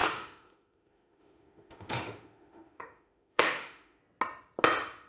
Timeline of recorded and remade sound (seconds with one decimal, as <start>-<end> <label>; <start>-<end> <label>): 0.0-4.0 remade; 4.0-5.1 recorded